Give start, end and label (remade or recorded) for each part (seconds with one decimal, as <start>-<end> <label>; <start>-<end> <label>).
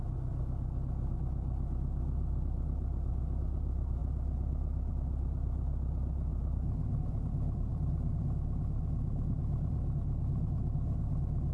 0.0-6.3 recorded; 6.3-8.1 remade; 8.1-11.5 recorded